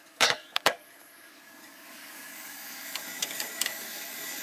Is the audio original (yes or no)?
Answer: no